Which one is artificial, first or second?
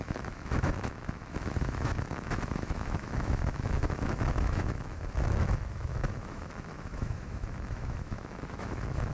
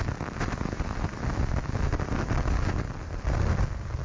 first